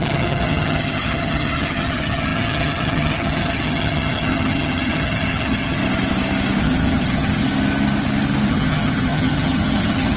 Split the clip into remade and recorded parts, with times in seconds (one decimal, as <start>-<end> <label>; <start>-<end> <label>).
0.0-5.8 remade; 5.8-6.6 recorded; 6.6-7.4 remade; 7.4-8.5 recorded; 8.5-10.2 remade